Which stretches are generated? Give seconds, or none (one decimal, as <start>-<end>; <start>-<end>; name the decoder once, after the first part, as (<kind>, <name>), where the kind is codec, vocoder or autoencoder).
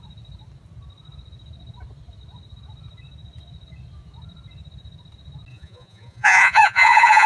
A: 5.5-7.3 (vocoder, Vocos)